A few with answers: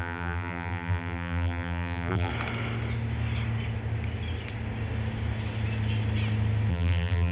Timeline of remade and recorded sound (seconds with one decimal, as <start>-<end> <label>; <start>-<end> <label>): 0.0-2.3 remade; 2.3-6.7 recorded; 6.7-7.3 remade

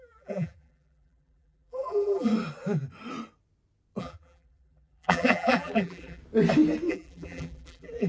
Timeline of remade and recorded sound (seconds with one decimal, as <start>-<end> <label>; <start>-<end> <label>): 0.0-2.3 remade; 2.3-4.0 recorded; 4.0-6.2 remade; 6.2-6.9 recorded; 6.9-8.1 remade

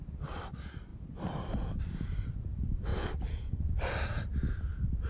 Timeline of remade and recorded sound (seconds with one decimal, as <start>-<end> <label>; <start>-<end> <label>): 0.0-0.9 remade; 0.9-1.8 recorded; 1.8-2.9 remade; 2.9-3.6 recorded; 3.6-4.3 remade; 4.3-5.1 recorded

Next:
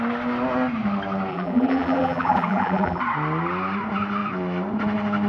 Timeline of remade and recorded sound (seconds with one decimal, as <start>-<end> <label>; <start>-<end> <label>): 0.0-1.3 recorded; 1.3-3.0 remade; 3.0-5.3 recorded

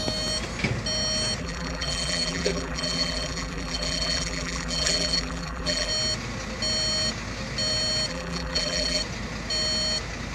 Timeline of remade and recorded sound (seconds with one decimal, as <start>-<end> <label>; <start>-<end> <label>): 0.0-1.4 recorded; 1.4-5.9 remade; 5.9-8.1 recorded; 8.1-9.0 remade; 9.0-10.3 recorded